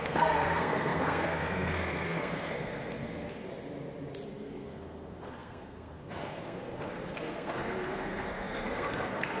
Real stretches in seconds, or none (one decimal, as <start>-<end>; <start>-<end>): 3.5-4.3